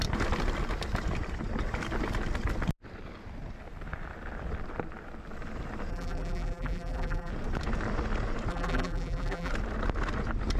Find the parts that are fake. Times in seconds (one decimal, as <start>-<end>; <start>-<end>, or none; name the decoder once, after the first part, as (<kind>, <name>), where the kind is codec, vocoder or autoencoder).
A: 5.9-7.3 (vocoder, BigVGAN v2); 8.5-9.5